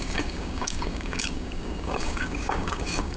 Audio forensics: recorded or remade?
remade